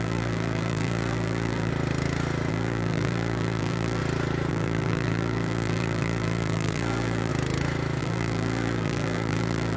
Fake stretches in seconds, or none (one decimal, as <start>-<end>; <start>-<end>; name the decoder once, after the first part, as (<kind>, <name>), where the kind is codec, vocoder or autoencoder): 0.0-1.7 (vocoder, BigVGAN v2); 2.5-4.0; 4.5-7.3; 8.0-9.8